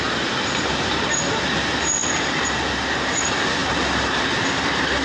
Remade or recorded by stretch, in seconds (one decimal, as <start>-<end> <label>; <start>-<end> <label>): 0.0-5.0 recorded